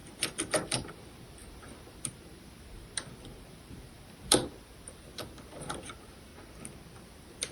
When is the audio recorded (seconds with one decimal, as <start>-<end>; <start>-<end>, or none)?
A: 6.3-7.0